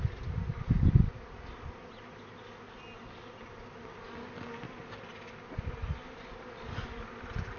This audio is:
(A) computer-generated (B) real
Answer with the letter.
B